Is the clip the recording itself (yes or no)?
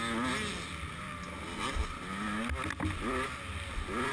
yes